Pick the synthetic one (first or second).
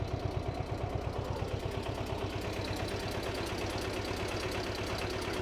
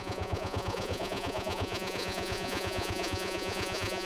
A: second